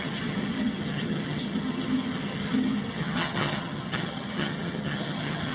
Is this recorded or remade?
remade